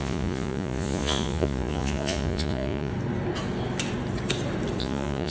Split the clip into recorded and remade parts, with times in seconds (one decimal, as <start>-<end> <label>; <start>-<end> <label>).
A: 0.0-2.9 remade; 2.9-4.8 recorded; 4.8-5.3 remade